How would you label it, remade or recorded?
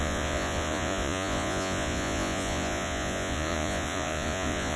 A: remade